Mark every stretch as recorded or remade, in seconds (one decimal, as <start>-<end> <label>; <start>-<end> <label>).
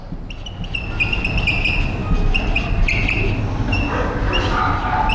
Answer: 0.0-5.1 recorded